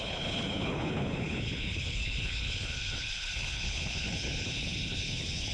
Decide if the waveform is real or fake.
fake